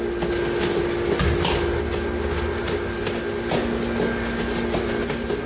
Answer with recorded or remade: recorded